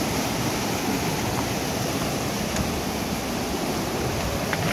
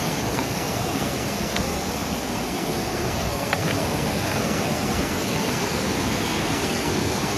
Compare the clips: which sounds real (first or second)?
first